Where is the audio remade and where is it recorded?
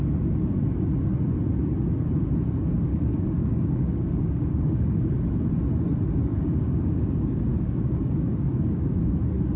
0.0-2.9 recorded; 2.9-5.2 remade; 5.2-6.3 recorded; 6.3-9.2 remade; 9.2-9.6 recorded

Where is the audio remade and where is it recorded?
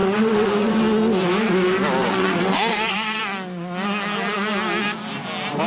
0.0-0.8 remade; 0.8-2.0 recorded; 2.0-3.2 remade; 3.2-5.7 recorded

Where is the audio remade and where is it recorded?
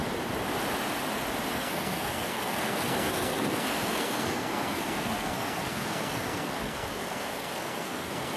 0.0-1.5 recorded; 1.5-8.4 remade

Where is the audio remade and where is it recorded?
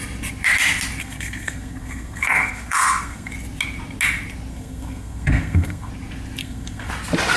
0.0-1.0 recorded; 1.0-3.3 remade; 3.3-4.5 recorded; 4.5-5.9 remade; 5.9-6.4 recorded; 6.4-6.9 remade; 6.9-7.4 recorded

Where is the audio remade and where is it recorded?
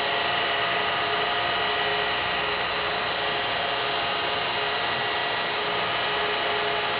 0.0-7.0 recorded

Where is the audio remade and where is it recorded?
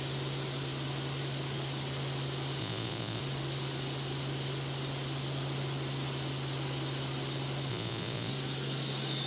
0.0-2.6 recorded; 2.6-3.2 remade; 3.2-7.7 recorded; 7.7-8.3 remade; 8.3-9.3 recorded